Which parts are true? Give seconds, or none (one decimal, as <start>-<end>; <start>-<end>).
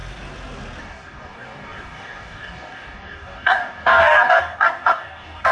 0.0-0.8